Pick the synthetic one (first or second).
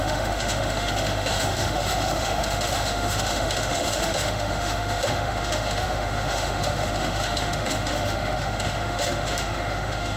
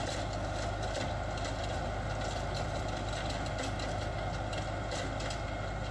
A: first